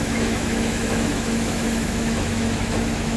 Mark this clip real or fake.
fake